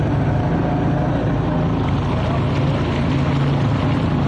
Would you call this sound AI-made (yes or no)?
no